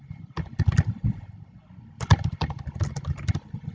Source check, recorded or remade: recorded